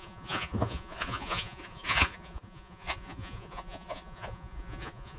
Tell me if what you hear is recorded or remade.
remade